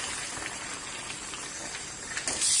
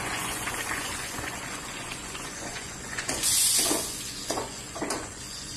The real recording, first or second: first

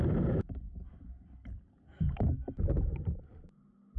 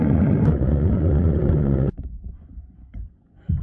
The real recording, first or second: first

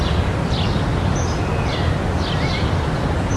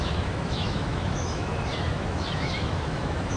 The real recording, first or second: first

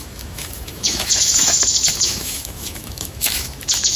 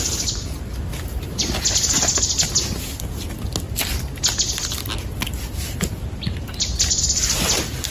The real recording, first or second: second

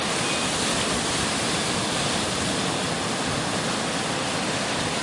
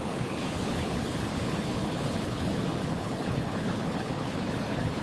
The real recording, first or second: first